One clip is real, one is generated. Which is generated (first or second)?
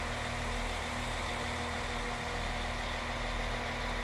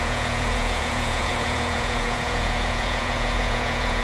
second